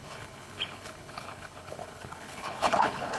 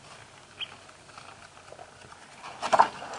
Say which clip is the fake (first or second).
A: first